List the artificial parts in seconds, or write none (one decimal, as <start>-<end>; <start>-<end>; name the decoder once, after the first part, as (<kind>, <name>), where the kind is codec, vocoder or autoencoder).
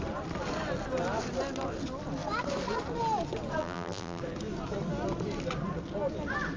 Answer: 3.6-4.2 (vocoder, BigVGAN v2)